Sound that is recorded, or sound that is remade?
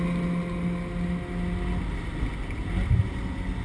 recorded